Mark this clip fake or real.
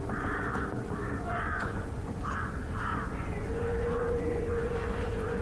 fake